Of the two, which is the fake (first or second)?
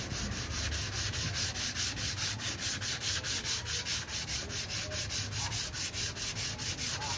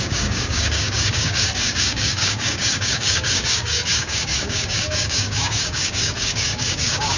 second